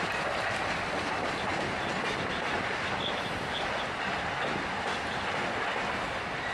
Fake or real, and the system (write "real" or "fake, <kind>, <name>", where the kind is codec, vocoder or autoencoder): real